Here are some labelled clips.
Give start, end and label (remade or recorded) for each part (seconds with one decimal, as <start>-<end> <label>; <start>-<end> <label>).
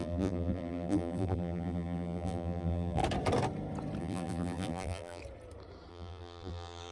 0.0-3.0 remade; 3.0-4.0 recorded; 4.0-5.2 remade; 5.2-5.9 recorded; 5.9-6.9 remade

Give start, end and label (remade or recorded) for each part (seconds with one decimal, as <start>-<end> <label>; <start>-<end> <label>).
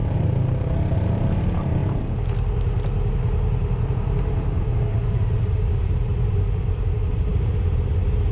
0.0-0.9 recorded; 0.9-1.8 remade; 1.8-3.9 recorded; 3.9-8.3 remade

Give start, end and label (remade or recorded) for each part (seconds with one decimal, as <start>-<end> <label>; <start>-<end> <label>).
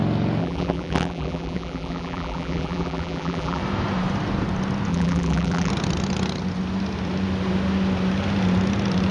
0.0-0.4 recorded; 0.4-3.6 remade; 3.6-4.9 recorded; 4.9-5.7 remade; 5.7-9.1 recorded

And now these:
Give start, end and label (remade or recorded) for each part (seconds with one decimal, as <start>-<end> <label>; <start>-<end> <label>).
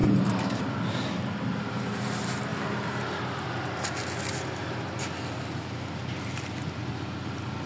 0.0-0.6 remade; 0.6-7.7 recorded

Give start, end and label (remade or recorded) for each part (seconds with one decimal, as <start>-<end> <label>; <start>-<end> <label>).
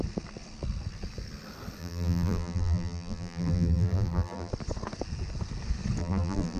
0.0-1.8 recorded; 1.8-4.5 remade; 4.5-6.0 recorded; 6.0-6.6 remade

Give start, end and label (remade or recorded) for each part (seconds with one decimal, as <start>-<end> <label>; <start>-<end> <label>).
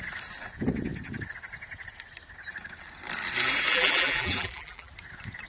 0.0-3.7 recorded; 3.7-4.9 remade; 4.9-5.5 recorded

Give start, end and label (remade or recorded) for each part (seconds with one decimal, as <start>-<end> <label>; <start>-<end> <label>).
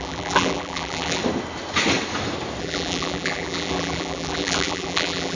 0.0-1.2 remade; 1.2-2.6 recorded; 2.6-5.3 remade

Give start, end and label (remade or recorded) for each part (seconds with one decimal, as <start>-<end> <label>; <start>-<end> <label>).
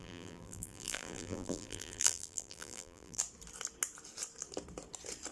0.0-3.2 remade; 3.2-5.3 recorded